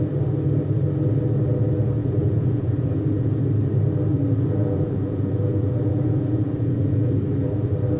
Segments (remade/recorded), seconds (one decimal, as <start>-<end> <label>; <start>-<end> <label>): 0.0-2.0 recorded; 2.0-3.4 remade; 3.4-4.1 recorded; 4.1-7.1 remade; 7.1-8.0 recorded